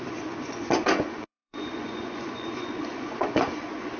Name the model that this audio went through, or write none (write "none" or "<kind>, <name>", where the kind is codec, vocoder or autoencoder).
vocoder, Vocos